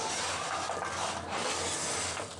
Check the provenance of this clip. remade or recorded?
recorded